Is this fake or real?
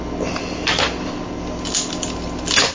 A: real